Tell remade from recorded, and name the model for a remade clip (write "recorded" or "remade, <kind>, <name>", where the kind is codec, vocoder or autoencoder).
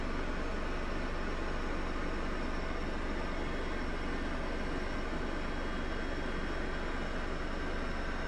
recorded